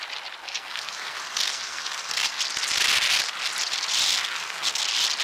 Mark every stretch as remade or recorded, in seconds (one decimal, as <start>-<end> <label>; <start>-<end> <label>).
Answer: 0.0-0.4 recorded; 0.4-2.4 remade; 2.4-4.1 recorded; 4.1-4.8 remade; 4.8-5.2 recorded

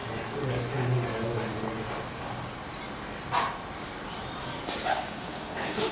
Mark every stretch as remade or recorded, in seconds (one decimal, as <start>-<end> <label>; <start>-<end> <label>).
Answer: 0.0-4.9 recorded; 4.9-5.9 remade

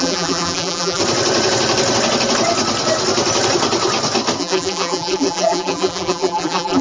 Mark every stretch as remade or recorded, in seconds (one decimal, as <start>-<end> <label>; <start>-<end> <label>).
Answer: 0.0-1.0 remade; 1.0-4.4 recorded; 4.4-6.8 remade

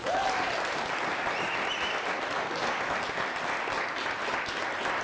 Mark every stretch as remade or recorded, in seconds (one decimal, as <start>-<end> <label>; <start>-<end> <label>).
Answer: 0.0-5.0 recorded